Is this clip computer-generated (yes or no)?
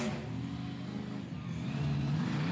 no